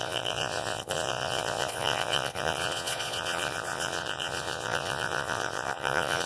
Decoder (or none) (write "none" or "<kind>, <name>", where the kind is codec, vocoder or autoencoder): vocoder, Vocos